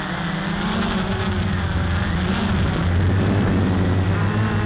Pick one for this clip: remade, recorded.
recorded